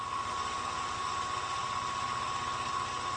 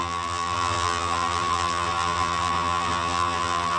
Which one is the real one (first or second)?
first